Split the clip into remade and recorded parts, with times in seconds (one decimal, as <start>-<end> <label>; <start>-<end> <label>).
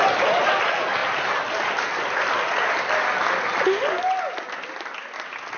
0.0-5.6 recorded